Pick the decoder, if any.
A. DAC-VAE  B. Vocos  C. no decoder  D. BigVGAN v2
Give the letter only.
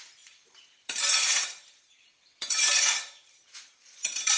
D